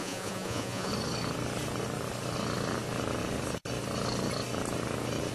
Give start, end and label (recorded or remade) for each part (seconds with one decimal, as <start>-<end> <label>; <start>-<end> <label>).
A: 0.0-0.9 remade; 0.9-5.3 recorded